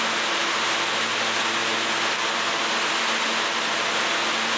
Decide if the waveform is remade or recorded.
recorded